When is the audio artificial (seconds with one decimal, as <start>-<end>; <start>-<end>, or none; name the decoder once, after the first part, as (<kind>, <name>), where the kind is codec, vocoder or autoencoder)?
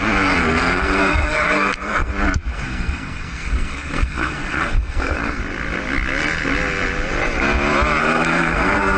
0.4-2.1 (codec, SNAC); 2.5-5.4; 8.0-9.0